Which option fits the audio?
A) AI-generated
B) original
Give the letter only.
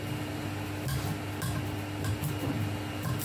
B